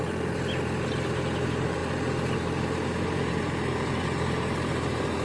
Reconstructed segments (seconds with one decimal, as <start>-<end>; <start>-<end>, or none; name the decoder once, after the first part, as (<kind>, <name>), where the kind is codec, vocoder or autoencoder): none